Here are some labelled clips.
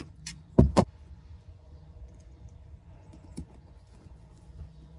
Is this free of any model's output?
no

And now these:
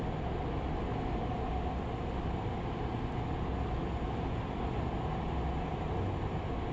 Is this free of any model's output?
yes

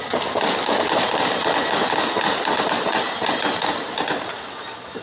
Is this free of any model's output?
yes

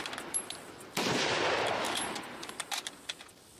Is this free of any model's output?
yes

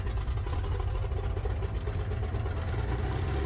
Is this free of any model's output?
yes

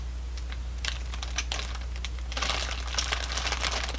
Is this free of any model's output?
yes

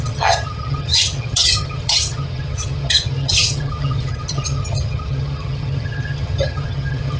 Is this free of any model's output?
no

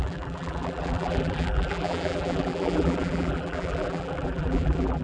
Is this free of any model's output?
no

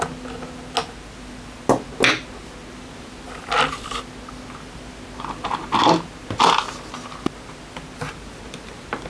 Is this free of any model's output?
yes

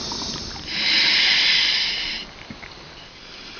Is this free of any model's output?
yes